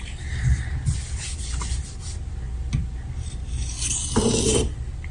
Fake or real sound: real